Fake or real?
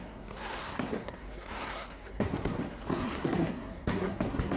fake